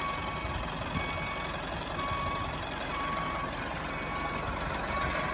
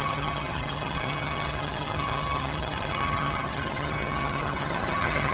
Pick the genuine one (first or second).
first